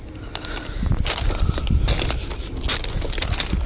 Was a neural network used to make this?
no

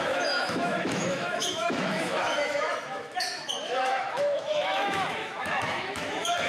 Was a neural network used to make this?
yes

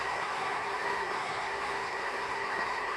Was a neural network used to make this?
yes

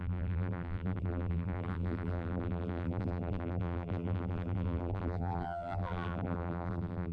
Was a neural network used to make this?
yes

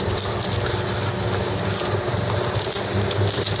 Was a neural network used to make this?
no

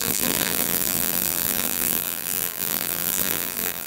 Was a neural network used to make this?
yes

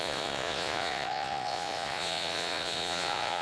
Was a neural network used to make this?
yes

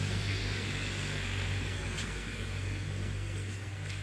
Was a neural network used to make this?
yes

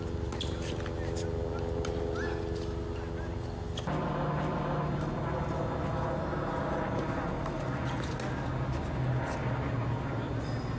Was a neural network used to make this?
no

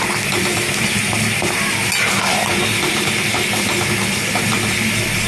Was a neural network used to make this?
no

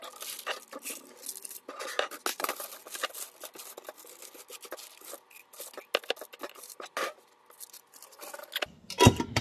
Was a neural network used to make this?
no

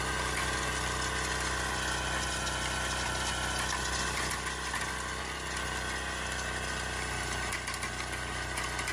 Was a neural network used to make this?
no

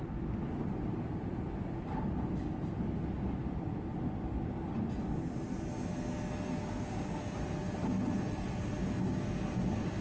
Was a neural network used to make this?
no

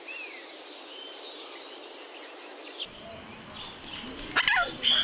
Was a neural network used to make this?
no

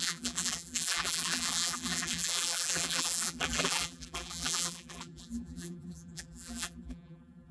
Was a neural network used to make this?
yes